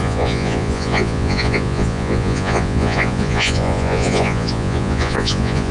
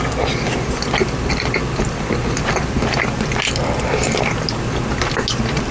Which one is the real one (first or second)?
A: second